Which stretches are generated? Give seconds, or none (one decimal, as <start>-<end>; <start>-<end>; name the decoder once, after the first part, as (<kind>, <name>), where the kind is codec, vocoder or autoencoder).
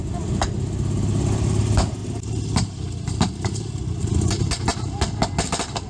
none